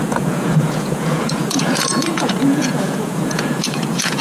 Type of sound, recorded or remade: remade